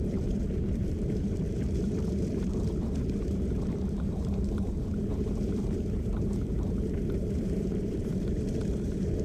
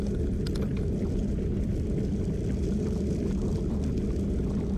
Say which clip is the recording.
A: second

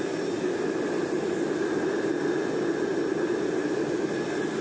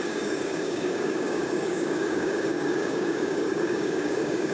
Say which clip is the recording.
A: first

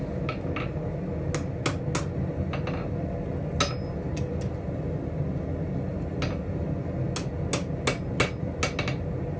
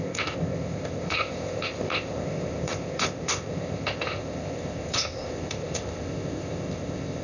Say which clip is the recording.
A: first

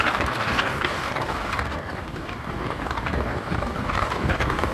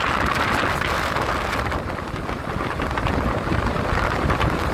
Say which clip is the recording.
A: second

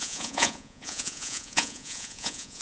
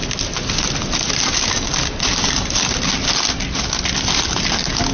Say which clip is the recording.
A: second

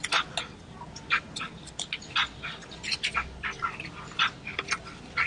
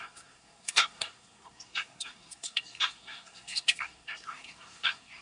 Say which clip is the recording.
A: first